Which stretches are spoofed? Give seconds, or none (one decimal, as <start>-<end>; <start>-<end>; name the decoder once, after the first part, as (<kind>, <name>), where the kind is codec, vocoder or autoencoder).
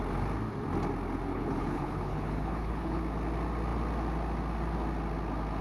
1.3-3.0 (codec, HILCodec)